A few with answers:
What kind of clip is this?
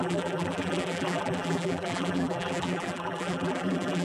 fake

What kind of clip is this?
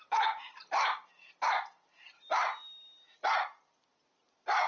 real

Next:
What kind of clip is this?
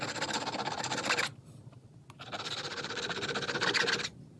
fake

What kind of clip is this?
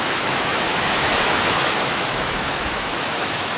fake